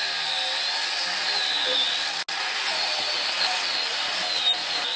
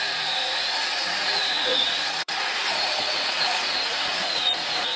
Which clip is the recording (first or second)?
first